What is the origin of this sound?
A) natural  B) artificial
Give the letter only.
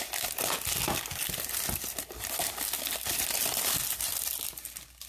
A